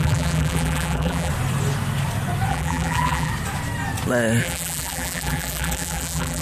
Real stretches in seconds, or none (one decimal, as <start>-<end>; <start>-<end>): 1.3-2.5; 3.3-4.4